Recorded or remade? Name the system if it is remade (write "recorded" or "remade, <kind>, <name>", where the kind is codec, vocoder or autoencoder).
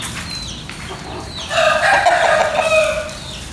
recorded